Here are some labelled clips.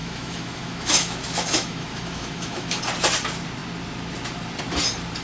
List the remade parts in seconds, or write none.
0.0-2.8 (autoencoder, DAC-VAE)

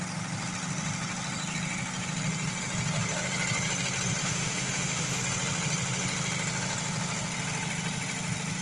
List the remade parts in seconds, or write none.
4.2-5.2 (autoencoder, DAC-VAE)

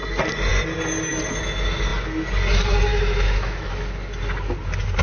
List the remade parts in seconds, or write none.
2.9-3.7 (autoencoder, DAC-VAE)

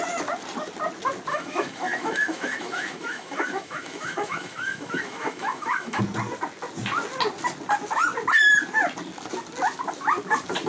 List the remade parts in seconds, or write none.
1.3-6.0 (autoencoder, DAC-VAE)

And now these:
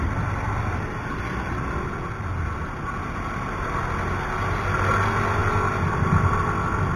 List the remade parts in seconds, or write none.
none